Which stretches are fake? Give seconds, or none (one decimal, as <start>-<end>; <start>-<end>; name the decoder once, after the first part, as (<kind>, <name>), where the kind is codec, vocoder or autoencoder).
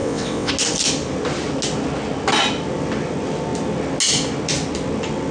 0.0-0.5 (vocoder, WaveNeXt)